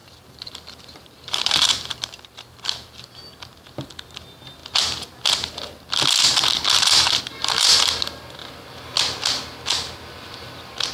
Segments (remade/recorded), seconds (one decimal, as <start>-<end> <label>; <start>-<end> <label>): 0.0-3.0 remade; 3.0-10.9 recorded